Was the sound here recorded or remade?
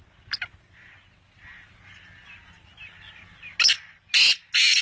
recorded